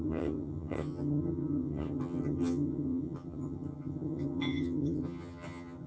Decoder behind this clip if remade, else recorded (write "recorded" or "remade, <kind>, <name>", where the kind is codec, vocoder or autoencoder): remade, vocoder, HiFi-GAN